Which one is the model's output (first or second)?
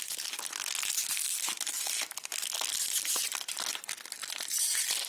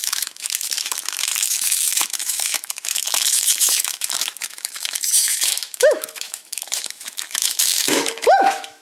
second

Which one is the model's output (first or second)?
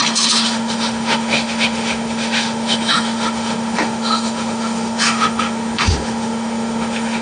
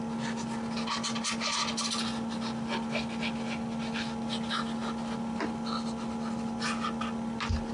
first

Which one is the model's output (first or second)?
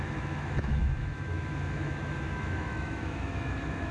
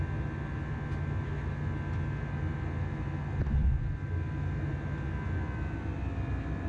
first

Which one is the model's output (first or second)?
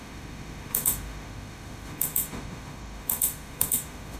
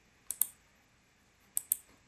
first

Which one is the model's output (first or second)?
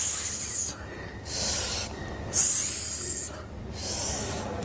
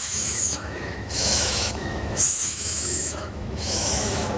second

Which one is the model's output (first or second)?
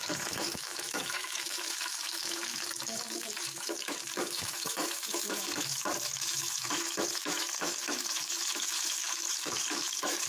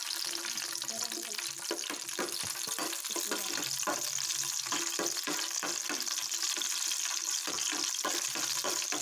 first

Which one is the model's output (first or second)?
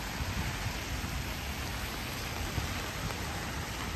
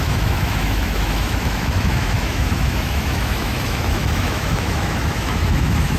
second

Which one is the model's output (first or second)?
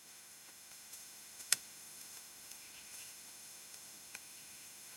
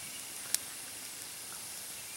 first